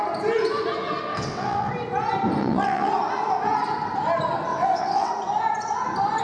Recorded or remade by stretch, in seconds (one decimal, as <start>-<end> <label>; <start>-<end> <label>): 0.0-1.1 recorded; 1.1-1.7 remade; 1.7-2.4 recorded; 2.4-2.9 remade; 2.9-4.5 recorded; 4.5-5.1 remade; 5.1-6.2 recorded